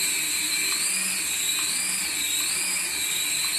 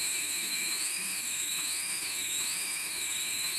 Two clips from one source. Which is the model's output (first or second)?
second